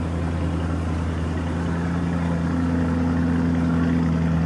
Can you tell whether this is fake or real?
real